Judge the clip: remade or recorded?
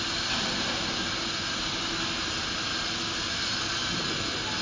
recorded